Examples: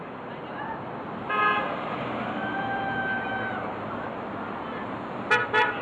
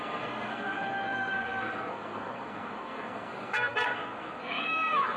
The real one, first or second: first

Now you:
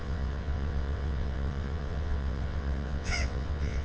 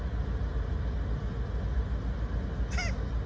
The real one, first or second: second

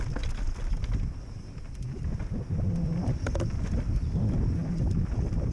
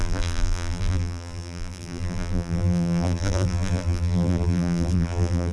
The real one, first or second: first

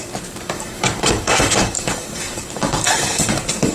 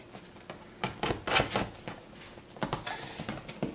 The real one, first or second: second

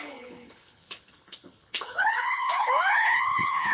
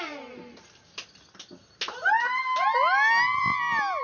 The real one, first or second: second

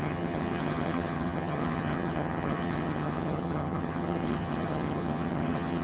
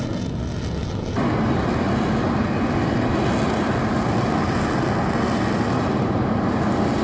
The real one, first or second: second